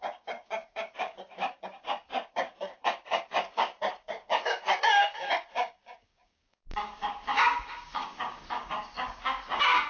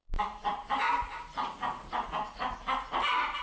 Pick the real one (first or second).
second